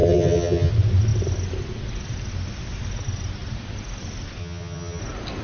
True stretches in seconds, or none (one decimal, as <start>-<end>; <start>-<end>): 0.7-4.4; 5.0-5.4